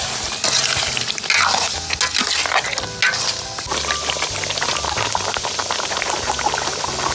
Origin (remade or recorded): recorded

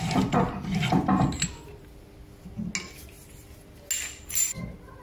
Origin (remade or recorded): recorded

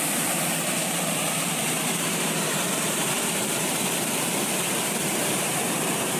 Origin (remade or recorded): remade